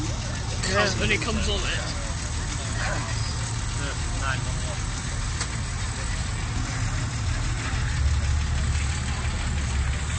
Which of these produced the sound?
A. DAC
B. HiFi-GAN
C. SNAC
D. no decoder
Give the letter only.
D